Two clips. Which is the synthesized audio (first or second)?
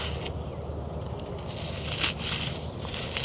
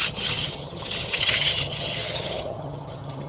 second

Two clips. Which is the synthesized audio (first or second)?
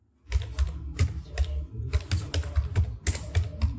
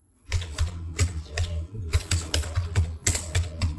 second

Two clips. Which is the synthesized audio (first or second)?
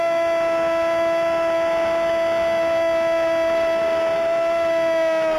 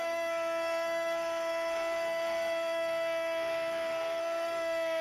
second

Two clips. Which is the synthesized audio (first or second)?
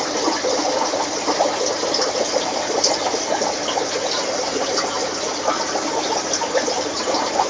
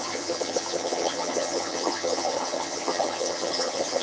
second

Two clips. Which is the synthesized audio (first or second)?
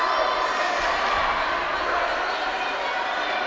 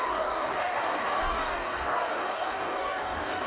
second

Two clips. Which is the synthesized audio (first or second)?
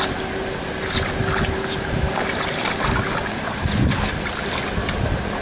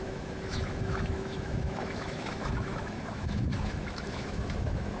second